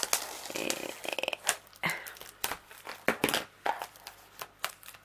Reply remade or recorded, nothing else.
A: recorded